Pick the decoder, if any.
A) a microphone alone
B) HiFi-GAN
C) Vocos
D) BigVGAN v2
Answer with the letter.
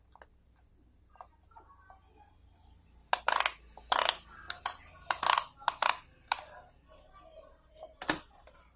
A